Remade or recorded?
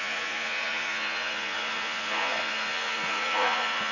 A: remade